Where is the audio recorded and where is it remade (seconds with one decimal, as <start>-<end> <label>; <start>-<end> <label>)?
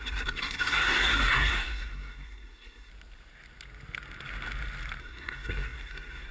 0.0-2.9 remade; 2.9-5.0 recorded; 5.0-6.3 remade